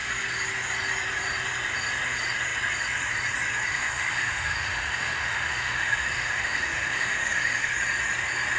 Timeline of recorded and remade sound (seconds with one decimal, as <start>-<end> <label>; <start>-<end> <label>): 0.0-3.7 recorded; 3.7-7.7 remade; 7.7-8.6 recorded